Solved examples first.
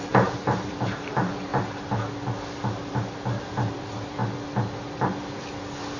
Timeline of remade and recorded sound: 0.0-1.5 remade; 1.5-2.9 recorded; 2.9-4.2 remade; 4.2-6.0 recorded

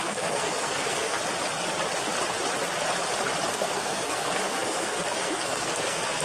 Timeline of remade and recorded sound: 0.0-1.2 remade; 1.2-3.5 recorded; 3.5-6.2 remade

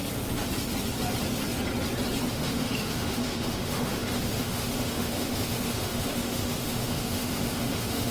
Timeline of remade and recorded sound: 0.0-2.3 recorded; 2.3-8.1 remade

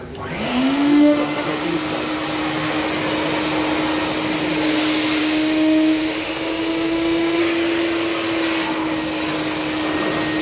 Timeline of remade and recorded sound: 0.0-0.5 recorded; 0.5-1.6 remade; 1.6-2.4 recorded; 2.4-2.9 remade; 2.9-5.2 recorded; 5.2-7.4 remade; 7.4-10.4 recorded